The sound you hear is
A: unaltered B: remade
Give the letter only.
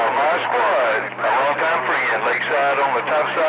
A